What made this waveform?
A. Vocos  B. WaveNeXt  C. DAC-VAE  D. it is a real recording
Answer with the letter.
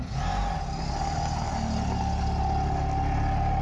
D